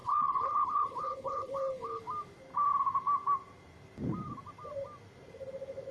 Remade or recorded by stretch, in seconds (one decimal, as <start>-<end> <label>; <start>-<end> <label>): 0.0-2.0 remade; 2.0-5.9 recorded